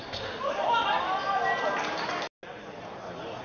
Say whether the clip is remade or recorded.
recorded